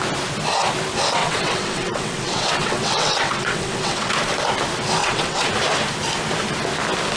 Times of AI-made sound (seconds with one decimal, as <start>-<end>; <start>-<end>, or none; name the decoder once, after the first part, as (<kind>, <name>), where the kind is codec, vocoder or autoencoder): 1.2-4.1 (vocoder, WaveNeXt); 5.0-5.5